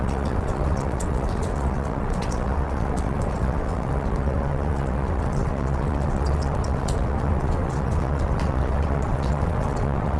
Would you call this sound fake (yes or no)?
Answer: yes